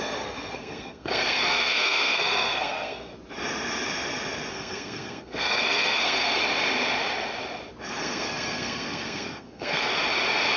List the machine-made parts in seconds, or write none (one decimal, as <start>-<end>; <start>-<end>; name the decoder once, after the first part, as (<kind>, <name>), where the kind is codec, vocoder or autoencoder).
0.0-3.1 (codec, SNAC); 4.5-6.4; 7.9-9.9